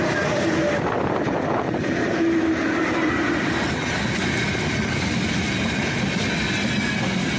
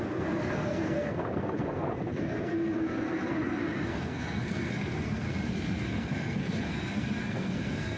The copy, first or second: second